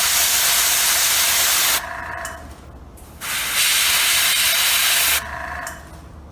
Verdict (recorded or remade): recorded